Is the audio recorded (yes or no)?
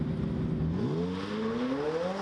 yes